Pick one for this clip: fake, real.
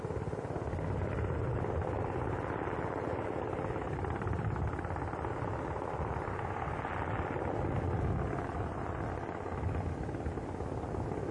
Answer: real